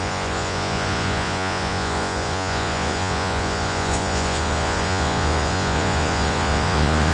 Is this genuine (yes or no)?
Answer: no